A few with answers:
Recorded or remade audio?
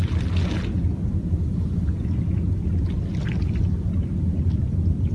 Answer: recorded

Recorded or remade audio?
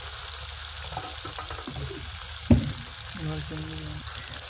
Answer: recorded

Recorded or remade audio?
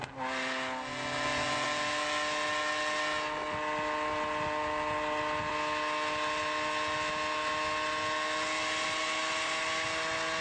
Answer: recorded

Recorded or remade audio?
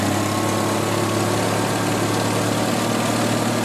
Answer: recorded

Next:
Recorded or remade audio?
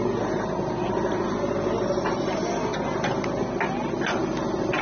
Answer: recorded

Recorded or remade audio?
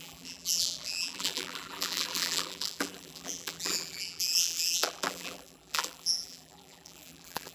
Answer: remade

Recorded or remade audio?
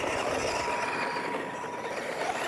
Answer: remade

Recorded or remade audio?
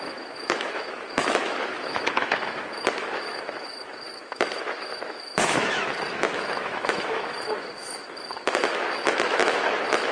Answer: remade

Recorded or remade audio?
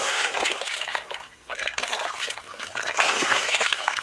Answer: remade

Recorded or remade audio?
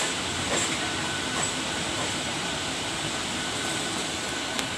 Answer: remade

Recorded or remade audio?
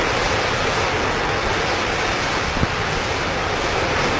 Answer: recorded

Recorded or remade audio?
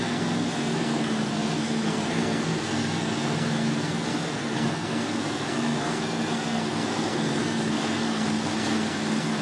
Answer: remade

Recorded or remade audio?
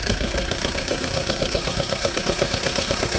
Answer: remade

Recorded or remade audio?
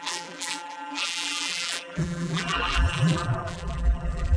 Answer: remade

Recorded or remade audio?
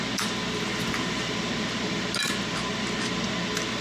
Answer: recorded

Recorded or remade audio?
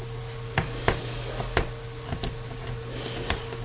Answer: recorded